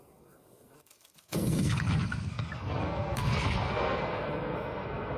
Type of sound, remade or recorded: remade